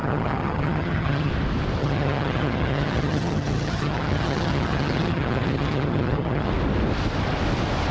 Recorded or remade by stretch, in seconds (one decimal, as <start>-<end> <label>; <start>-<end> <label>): 0.0-1.3 remade; 1.3-1.8 recorded; 1.8-6.5 remade; 6.5-7.9 recorded